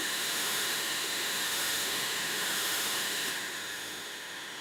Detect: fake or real fake